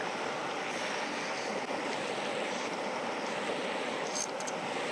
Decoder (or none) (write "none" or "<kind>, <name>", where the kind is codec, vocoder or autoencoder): none